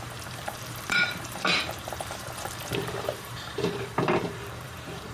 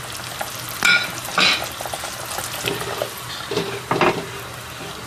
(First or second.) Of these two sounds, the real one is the second